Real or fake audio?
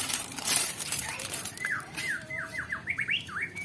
fake